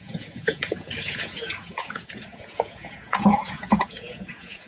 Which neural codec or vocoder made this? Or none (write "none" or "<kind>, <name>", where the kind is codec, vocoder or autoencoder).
vocoder, Vocos